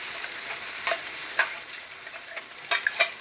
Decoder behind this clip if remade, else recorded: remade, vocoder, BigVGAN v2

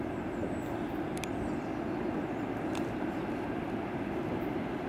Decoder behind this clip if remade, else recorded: recorded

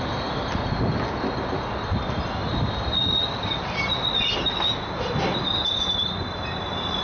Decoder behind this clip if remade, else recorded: recorded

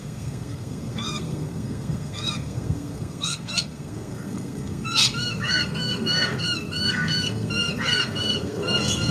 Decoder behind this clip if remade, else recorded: remade, codec, SNAC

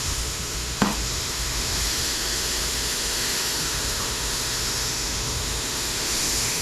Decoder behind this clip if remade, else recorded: remade, autoencoder, DAC-VAE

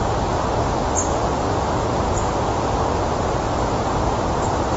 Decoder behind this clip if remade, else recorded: recorded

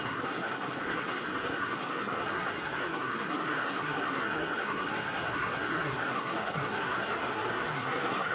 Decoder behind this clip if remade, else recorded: remade, codec, SNAC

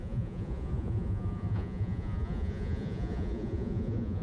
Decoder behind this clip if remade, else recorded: remade, vocoder, Vocos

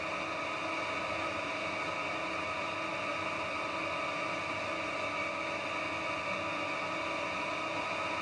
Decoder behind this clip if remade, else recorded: recorded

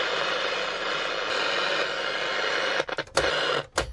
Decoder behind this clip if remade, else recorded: recorded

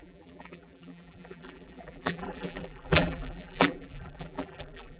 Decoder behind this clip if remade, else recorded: remade, vocoder, BigVGAN v2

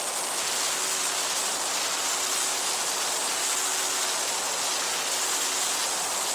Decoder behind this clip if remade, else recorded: recorded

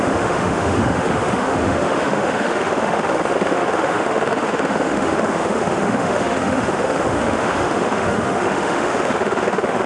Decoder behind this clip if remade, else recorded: remade, autoencoder, DAC-VAE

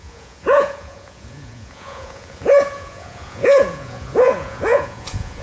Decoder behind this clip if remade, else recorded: remade, vocoder, Vocos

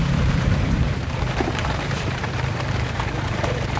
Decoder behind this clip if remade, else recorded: remade, vocoder, BigVGAN v2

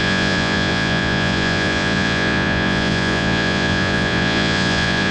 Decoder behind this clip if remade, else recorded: remade, vocoder, Vocos